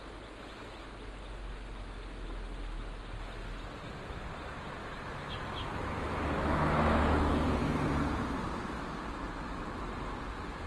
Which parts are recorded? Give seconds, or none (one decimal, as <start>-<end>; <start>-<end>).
0.0-4.8; 7.0-10.7